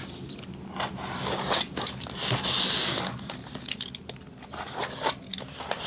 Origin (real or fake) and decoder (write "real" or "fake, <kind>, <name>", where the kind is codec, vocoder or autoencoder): real